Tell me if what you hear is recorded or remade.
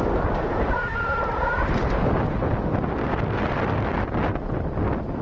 recorded